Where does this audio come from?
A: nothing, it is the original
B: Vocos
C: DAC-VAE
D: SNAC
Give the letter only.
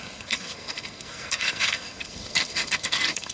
D